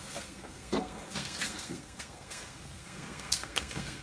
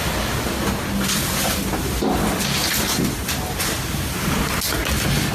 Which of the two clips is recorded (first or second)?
second